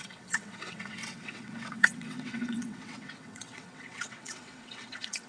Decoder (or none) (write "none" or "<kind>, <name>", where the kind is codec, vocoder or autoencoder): vocoder, WaveNeXt